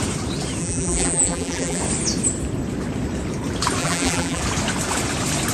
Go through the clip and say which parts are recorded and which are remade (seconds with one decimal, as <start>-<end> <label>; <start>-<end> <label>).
0.0-0.6 recorded; 0.6-1.8 remade; 1.8-3.8 recorded; 3.8-4.4 remade; 4.4-5.5 recorded